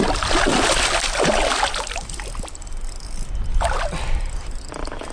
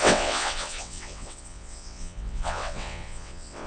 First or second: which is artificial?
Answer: second